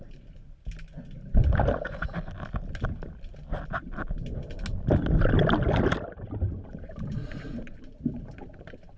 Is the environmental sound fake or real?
real